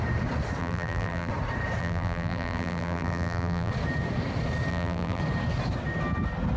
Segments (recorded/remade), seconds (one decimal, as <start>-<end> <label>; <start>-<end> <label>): 0.0-0.6 recorded; 0.6-1.3 remade; 1.3-1.8 recorded; 1.8-3.7 remade; 3.7-4.7 recorded; 4.7-5.2 remade; 5.2-6.6 recorded